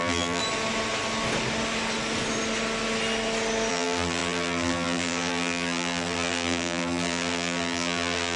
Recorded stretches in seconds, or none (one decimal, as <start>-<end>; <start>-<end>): 0.4-3.7